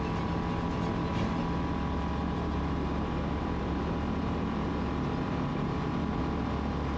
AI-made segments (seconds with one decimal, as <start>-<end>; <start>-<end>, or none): 2.2-4.7; 5.5-6.2